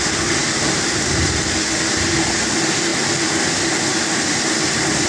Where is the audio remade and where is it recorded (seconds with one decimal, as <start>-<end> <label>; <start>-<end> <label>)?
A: 0.0-3.9 recorded; 3.9-5.1 remade